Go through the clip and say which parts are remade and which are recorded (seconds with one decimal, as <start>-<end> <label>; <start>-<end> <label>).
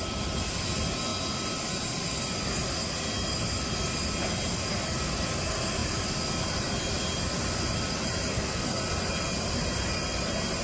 0.0-8.3 recorded; 8.3-8.8 remade; 8.8-10.6 recorded